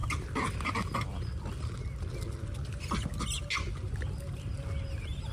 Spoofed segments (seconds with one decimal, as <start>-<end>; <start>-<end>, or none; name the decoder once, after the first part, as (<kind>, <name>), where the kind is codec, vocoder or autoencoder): none